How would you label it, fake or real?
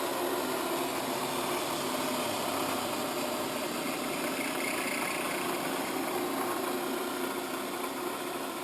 real